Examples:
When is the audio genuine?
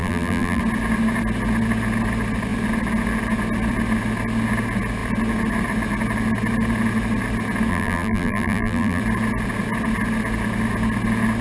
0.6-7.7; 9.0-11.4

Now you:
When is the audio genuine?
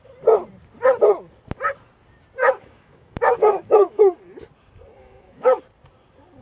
0.0-2.4; 4.0-5.0; 5.6-6.4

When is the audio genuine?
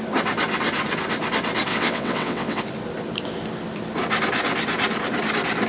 0.0-1.7; 2.6-5.7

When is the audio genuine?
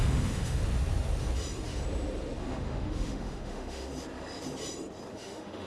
0.6-2.4; 3.9-5.1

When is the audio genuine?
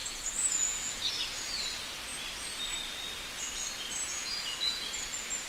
1.0-4.1; 4.9-5.5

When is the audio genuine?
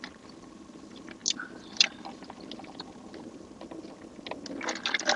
0.0-5.2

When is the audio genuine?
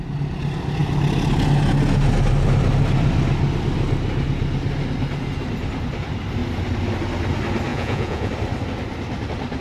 0.0-7.7; 8.3-9.6